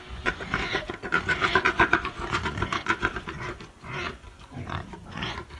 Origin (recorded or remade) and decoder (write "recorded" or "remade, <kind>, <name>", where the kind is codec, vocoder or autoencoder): remade, vocoder, Vocos